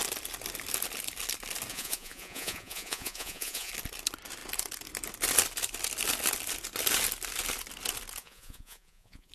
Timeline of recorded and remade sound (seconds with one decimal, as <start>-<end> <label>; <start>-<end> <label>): 0.0-1.7 recorded; 1.7-3.7 remade; 3.7-8.2 recorded; 8.2-9.3 remade